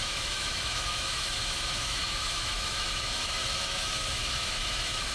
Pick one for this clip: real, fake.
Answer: fake